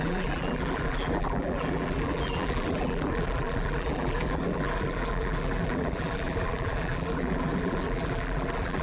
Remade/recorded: remade